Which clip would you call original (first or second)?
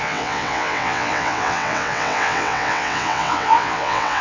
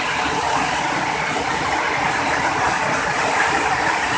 second